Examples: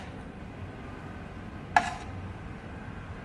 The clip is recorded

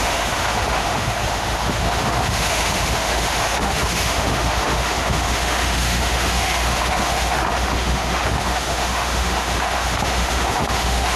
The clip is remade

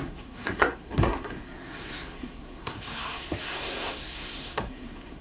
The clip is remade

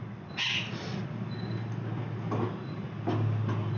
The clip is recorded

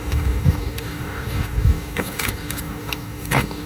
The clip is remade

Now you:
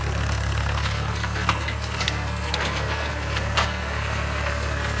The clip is remade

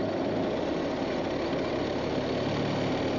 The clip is recorded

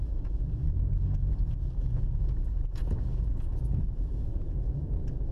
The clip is remade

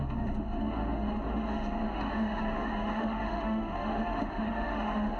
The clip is remade